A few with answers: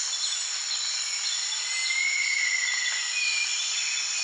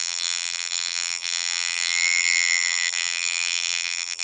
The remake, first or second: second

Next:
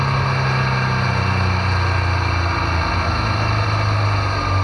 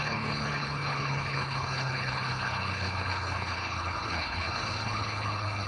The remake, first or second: second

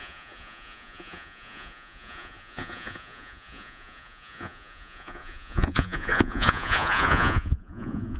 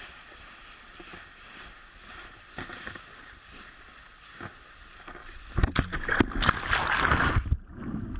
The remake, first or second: first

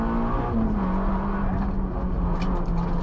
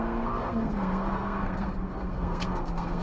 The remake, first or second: second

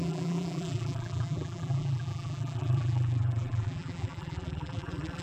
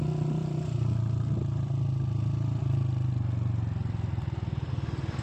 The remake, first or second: first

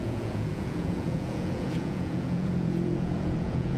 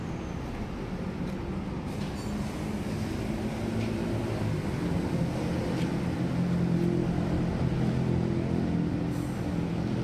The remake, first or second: first